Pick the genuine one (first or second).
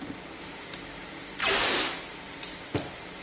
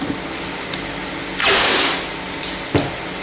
second